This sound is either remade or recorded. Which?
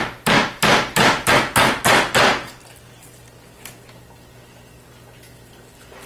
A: recorded